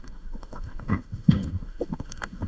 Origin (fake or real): fake